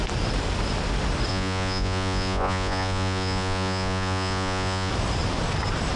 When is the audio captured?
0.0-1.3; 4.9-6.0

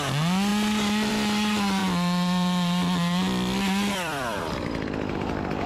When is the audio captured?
0.0-1.8; 4.4-5.7

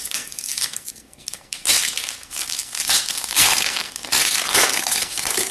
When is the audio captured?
none

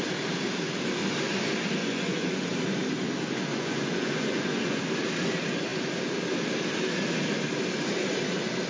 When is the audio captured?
0.0-1.8; 2.4-3.5; 4.8-8.7

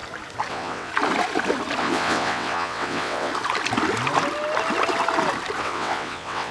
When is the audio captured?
0.0-0.5; 0.9-1.8; 3.3-5.6

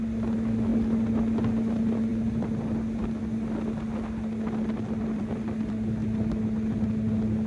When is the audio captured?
0.0-7.5